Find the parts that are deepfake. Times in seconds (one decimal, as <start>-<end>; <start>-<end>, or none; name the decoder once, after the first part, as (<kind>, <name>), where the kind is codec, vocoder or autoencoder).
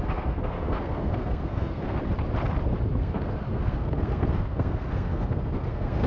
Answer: 0.0-2.0 (codec, SNAC); 2.9-6.1